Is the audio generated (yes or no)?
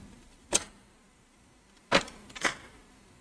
yes